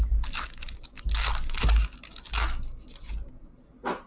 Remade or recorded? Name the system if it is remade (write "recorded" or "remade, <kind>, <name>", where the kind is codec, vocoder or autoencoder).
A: recorded